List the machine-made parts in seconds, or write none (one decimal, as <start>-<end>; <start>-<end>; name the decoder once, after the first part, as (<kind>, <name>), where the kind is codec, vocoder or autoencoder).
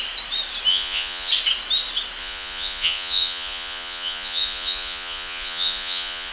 0.7-1.3 (vocoder, Vocos); 2.2-6.3